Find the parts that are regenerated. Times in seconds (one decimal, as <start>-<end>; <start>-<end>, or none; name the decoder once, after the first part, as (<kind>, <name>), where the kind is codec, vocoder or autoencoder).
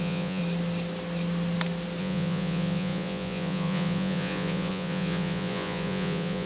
0.0-0.4 (vocoder, Vocos); 2.0-6.5